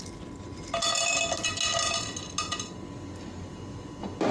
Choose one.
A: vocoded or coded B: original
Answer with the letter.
B